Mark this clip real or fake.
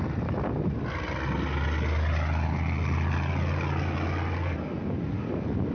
real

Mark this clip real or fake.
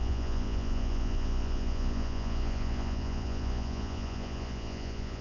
fake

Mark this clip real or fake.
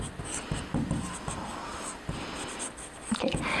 real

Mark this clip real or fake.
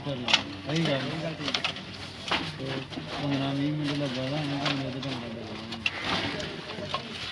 real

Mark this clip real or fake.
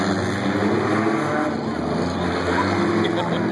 real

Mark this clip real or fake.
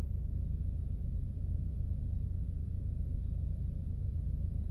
fake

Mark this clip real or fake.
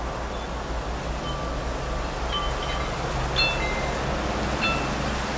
real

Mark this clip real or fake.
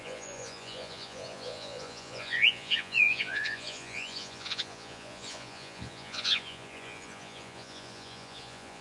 fake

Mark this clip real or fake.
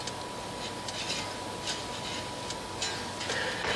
real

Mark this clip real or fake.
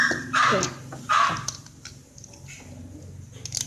real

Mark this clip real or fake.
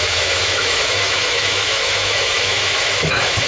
fake